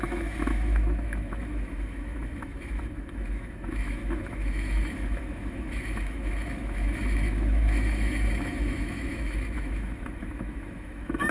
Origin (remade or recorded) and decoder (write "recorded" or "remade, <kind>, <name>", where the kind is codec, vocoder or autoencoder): remade, autoencoder, DAC-VAE